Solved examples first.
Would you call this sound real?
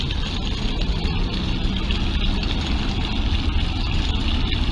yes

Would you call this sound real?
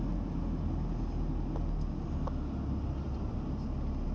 yes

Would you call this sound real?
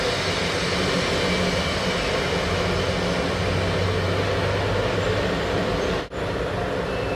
yes